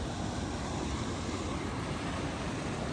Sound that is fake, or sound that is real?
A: real